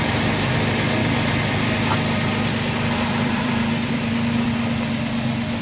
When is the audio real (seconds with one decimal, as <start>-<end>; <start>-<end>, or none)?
0.0-1.0; 4.1-5.6